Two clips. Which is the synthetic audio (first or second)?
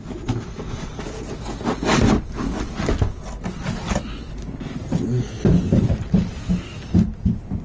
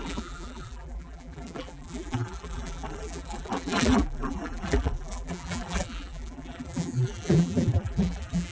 second